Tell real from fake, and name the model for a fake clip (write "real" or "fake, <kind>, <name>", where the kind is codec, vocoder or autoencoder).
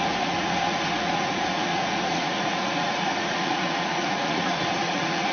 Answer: fake, vocoder, Vocos